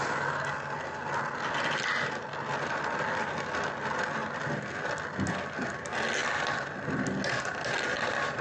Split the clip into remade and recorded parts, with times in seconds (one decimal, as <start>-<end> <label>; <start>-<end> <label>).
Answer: 0.0-8.4 recorded